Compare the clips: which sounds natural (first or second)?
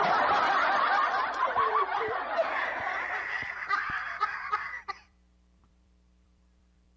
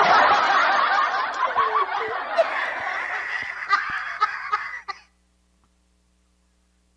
second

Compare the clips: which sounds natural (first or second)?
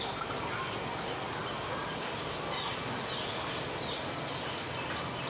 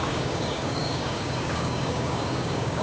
first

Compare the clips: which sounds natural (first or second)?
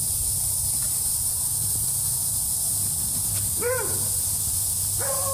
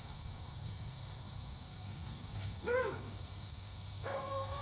first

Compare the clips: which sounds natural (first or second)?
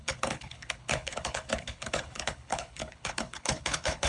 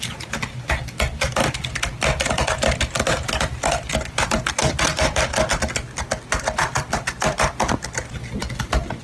second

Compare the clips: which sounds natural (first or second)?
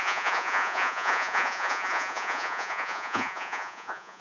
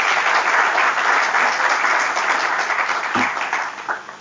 second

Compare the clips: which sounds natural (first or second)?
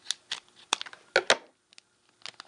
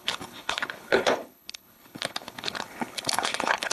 first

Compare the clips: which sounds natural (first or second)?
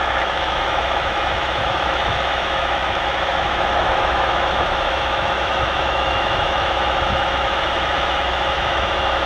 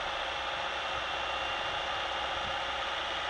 second